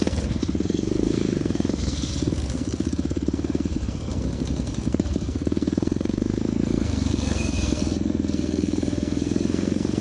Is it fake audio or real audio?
fake